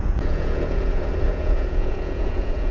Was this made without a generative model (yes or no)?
no